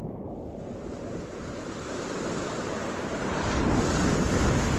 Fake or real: fake